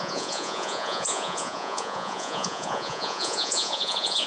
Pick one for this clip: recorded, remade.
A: remade